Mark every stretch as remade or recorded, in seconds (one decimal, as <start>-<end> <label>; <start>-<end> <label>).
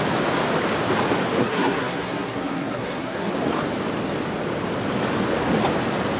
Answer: 0.0-1.4 recorded; 1.4-3.3 remade; 3.3-6.2 recorded